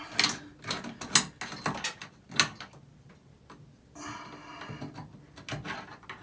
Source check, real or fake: real